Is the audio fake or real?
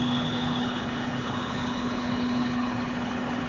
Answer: fake